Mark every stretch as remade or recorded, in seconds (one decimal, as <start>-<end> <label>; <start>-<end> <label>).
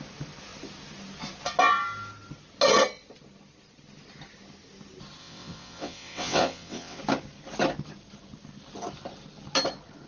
0.0-5.2 recorded; 5.2-7.0 remade; 7.0-10.1 recorded